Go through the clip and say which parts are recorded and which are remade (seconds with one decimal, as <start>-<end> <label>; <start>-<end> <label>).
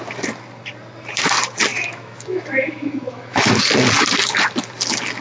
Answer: 0.0-1.7 recorded; 1.7-3.5 remade; 3.5-5.2 recorded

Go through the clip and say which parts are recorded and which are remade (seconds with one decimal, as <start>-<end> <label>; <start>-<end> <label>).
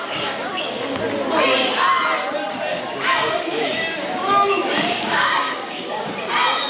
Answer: 0.0-1.0 remade; 1.0-2.7 recorded; 2.7-6.1 remade; 6.1-6.7 recorded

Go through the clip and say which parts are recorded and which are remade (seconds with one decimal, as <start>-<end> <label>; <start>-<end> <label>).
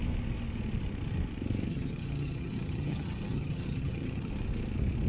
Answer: 0.0-1.7 recorded; 1.7-4.3 remade; 4.3-5.1 recorded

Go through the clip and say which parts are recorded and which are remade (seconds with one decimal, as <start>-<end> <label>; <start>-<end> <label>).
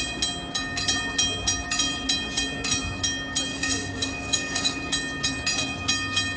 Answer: 0.0-3.5 recorded; 3.5-4.8 remade; 4.8-6.4 recorded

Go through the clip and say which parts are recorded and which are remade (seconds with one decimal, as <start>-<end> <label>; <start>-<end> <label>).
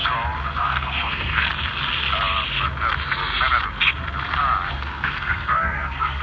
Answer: 0.0-0.6 recorded; 0.6-1.5 remade; 1.5-4.7 recorded; 4.7-6.2 remade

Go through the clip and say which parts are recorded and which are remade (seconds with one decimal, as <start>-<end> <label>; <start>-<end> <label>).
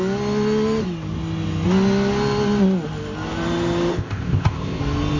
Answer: 0.0-3.9 recorded; 3.9-4.8 remade; 4.8-5.2 recorded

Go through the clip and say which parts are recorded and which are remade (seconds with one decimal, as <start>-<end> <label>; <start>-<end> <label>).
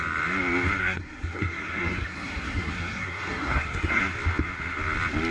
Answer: 0.0-0.8 recorded; 0.8-4.0 remade; 4.0-5.3 recorded